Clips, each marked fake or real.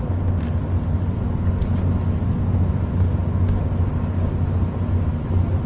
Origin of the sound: real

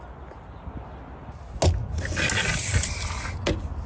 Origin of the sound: real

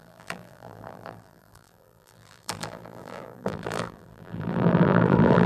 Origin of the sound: fake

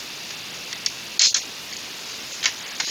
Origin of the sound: real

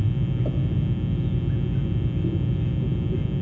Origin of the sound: real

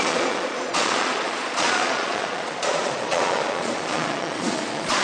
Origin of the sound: fake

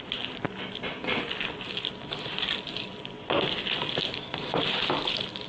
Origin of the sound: real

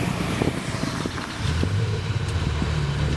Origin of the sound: fake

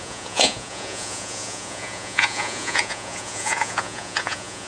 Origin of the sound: fake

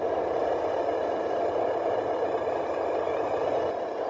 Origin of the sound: real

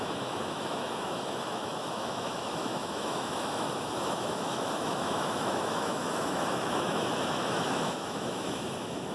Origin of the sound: fake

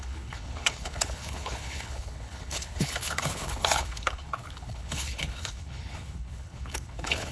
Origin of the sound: fake